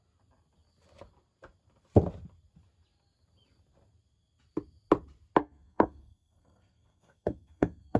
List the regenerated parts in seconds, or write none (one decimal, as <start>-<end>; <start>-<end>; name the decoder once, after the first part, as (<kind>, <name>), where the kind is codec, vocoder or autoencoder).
5.4-8.0 (codec, SNAC)